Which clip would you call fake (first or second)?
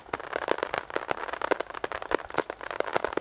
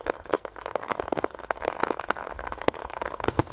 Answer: second